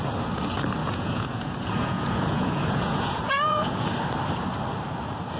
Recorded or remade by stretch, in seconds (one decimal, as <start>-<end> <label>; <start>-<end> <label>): 0.0-0.8 recorded; 0.8-3.9 remade; 3.9-5.4 recorded